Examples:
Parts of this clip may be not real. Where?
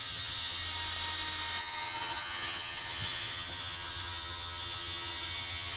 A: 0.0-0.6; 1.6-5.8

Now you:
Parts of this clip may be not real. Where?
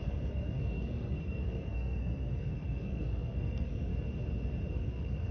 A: 0.0-3.9; 4.7-5.3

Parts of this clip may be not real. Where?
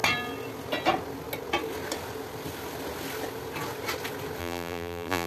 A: 4.4-5.3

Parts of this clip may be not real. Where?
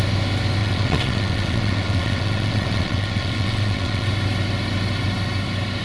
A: 0.6-4.1